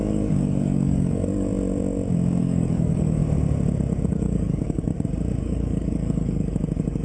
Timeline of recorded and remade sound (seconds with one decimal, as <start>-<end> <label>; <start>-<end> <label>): 0.0-1.5 remade; 1.5-2.4 recorded; 2.4-3.2 remade; 3.2-4.1 recorded; 4.1-4.9 remade; 4.9-5.4 recorded; 5.4-7.0 remade